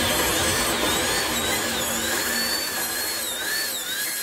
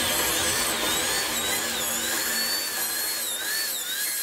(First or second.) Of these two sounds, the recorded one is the second